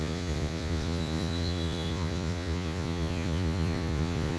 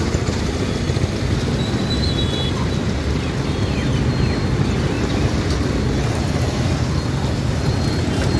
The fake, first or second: first